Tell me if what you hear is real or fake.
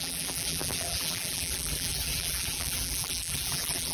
fake